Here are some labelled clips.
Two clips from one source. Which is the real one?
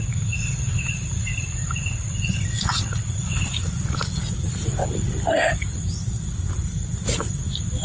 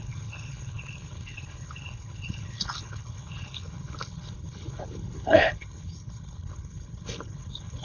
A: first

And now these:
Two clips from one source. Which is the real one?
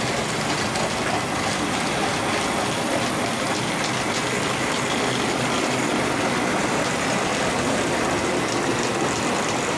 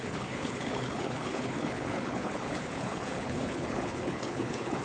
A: first